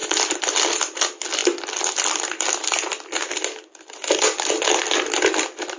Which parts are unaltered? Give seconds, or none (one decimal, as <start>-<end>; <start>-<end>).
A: 1.4-1.9; 2.9-5.8